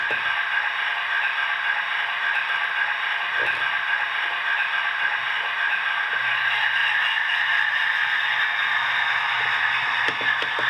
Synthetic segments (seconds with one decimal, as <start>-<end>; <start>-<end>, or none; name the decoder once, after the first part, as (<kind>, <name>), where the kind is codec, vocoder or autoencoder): none